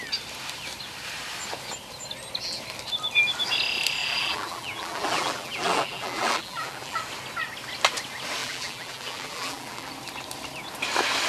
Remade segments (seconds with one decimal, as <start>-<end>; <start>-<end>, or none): 4.0-7.0; 8.4-9.9